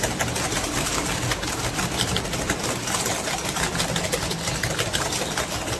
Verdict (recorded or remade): recorded